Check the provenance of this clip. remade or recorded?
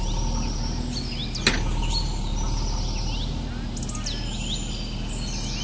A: recorded